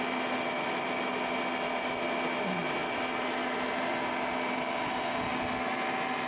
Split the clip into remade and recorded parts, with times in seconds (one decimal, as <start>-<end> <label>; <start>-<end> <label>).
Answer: 0.0-6.3 recorded